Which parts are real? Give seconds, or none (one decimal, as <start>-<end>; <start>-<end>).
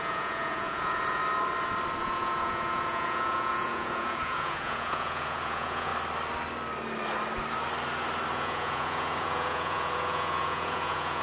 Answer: 1.2-2.0; 5.9-8.3